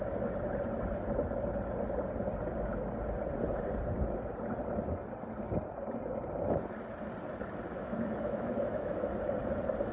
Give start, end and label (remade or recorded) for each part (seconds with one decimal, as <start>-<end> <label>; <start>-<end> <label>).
0.0-7.7 recorded; 7.7-9.1 remade; 9.1-9.9 recorded